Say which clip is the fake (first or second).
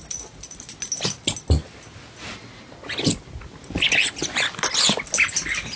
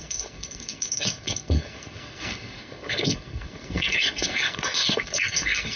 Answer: second